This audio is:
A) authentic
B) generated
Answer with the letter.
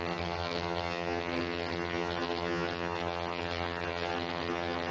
B